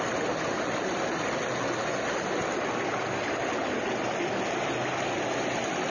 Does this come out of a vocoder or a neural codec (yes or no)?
no